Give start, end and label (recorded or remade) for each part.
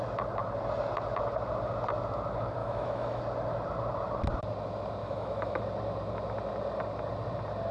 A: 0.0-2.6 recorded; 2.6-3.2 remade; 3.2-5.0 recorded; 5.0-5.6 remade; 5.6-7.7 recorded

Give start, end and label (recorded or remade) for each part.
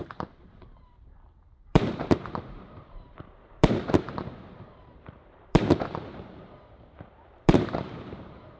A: 0.0-5.7 remade; 5.7-7.0 recorded; 7.0-8.6 remade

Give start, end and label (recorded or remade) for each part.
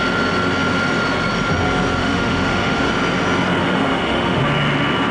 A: 0.0-2.0 recorded; 2.0-2.9 remade; 2.9-3.6 recorded; 3.6-4.4 remade; 4.4-5.1 recorded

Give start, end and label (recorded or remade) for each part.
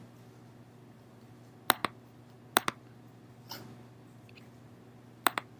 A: 0.0-5.6 recorded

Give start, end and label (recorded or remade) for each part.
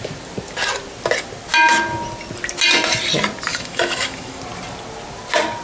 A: 0.0-3.5 recorded; 3.5-4.4 remade; 4.4-5.6 recorded